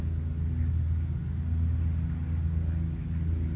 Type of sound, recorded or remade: recorded